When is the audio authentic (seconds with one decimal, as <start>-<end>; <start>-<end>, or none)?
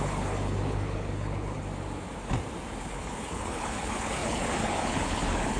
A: 1.7-2.8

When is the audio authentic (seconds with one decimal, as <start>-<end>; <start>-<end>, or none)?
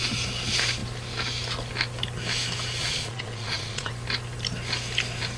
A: 0.0-2.8; 3.9-5.4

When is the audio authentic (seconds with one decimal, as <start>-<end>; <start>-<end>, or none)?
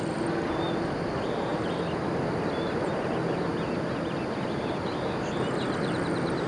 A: 0.0-6.5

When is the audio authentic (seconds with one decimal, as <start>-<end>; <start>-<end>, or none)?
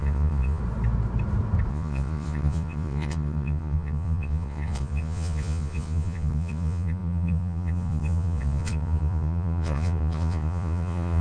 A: 0.6-1.7